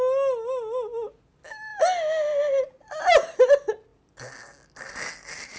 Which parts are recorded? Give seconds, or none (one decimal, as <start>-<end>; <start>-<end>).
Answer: 0.0-5.6